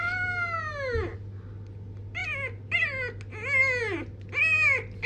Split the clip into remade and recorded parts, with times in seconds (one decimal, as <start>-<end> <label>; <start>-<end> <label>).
0.0-5.1 recorded